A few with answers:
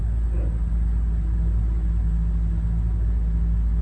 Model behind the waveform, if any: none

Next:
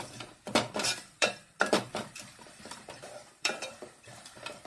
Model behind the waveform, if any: vocoder, BigVGAN v2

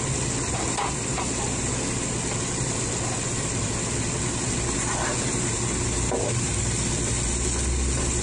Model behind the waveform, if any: none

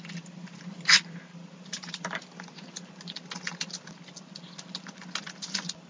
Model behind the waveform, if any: none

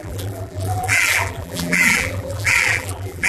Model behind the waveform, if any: vocoder, BigVGAN v2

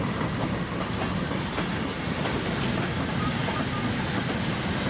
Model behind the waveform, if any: none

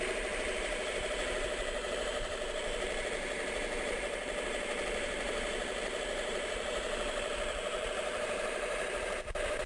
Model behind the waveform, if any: vocoder, BigVGAN v2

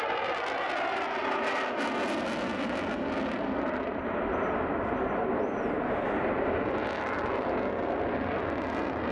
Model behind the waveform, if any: none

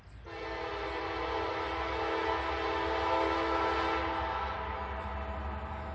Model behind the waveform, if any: none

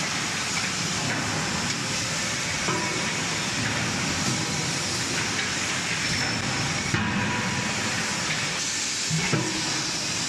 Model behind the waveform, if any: none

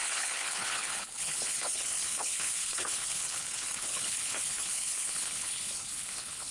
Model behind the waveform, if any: codec, HILCodec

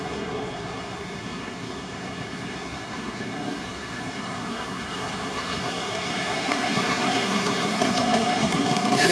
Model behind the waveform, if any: codec, SNAC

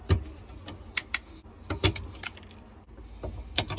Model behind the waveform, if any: none